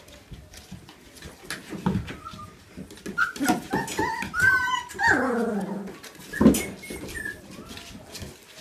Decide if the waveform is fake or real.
real